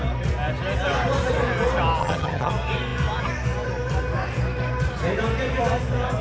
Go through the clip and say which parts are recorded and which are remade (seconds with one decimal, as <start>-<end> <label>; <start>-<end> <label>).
0.0-2.0 recorded; 2.0-2.5 remade; 2.5-6.2 recorded